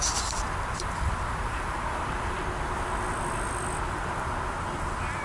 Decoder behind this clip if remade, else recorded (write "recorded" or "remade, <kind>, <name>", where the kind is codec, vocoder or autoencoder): recorded